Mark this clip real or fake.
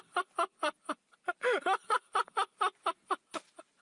real